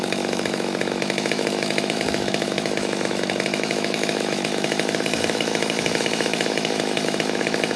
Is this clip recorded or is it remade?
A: remade